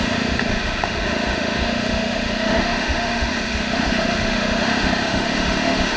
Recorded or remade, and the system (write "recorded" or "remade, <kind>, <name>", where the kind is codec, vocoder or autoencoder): remade, autoencoder, DAC-VAE